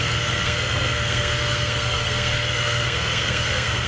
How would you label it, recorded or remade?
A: remade